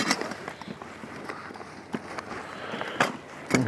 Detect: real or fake real